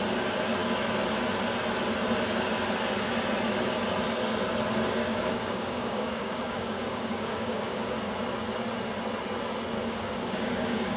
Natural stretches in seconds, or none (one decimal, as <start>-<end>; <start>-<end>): 0.0-5.0; 8.0-9.8